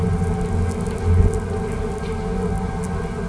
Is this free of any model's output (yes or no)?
yes